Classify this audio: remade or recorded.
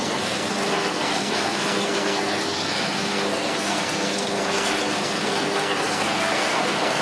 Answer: remade